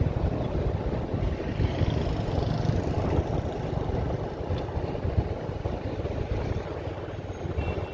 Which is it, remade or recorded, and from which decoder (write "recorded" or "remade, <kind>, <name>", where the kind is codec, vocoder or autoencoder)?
recorded